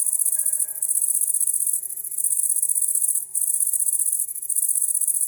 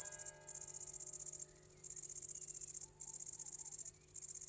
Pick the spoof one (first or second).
first